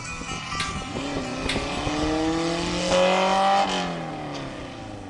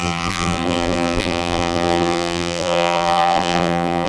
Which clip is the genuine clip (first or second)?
first